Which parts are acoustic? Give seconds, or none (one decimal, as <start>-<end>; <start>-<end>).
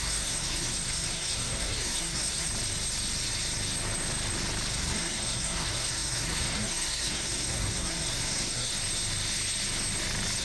2.5-4.7; 8.7-10.4